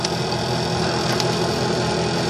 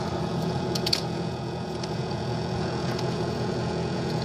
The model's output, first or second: second